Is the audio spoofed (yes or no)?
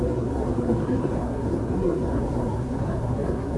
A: yes